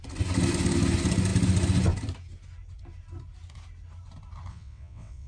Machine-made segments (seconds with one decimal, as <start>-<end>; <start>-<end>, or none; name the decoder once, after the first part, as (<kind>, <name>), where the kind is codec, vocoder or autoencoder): 4.5-5.3 (vocoder, WaveNeXt)